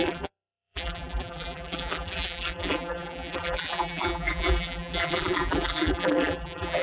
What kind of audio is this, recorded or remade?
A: remade